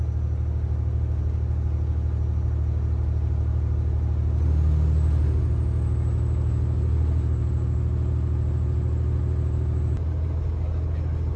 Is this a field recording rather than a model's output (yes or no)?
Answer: yes